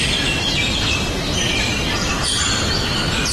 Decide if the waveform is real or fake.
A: fake